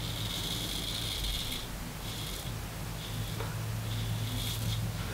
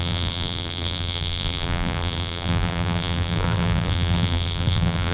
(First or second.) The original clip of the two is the first